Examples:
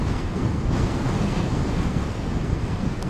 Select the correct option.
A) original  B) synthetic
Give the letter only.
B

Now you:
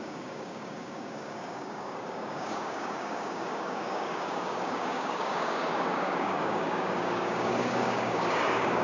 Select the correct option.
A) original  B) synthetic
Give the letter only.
B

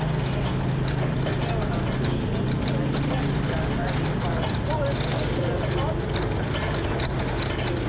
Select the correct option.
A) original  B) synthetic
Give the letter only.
A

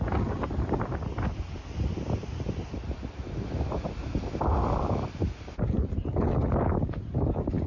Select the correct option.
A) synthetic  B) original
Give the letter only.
B